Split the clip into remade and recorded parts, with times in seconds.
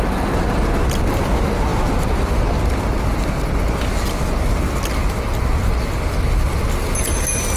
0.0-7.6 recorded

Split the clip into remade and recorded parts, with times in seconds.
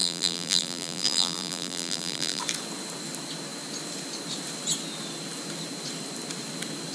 0.0-2.4 remade; 2.4-6.9 recorded